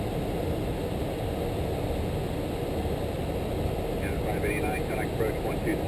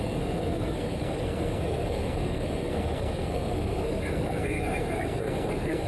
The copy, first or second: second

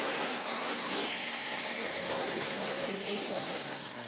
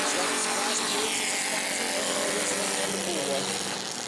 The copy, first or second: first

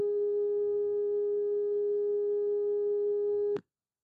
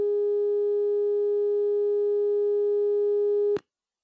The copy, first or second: first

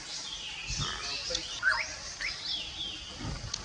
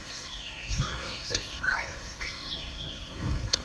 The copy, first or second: second